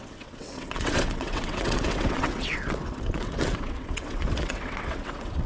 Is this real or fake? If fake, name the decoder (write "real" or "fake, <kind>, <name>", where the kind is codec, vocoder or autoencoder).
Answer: fake, vocoder, WaveNeXt